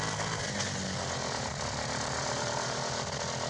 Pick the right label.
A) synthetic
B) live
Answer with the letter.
B